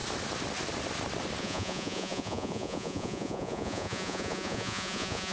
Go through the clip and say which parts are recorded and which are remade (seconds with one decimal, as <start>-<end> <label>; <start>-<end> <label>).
0.0-1.4 recorded; 1.4-5.3 remade